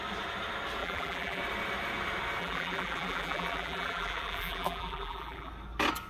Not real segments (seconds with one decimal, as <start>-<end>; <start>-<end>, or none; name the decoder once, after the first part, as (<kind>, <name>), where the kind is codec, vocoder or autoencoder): 0.8-1.4 (vocoder, BigVGAN v2); 2.4-5.5